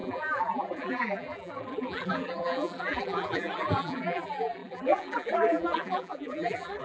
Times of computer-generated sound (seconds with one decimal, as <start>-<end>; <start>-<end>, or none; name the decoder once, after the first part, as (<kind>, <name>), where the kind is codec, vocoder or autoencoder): 0.0-6.8 (vocoder, BigVGAN v2)